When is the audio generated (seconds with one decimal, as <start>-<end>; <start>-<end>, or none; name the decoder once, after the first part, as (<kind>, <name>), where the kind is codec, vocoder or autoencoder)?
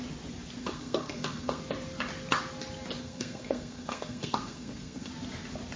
0.6-1.6 (codec, SNAC); 3.0-5.1